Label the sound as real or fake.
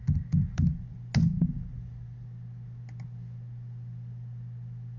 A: real